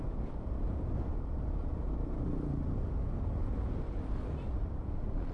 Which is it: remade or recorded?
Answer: recorded